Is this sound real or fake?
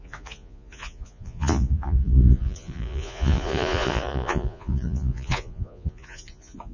fake